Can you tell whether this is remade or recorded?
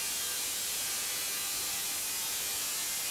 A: recorded